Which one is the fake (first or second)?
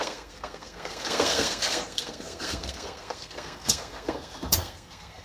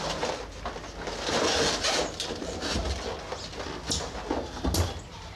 first